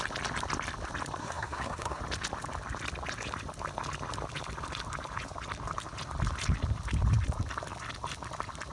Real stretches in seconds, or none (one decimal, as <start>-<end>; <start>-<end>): 0.0-1.2; 2.0-8.7